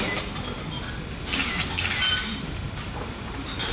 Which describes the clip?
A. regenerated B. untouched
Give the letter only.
B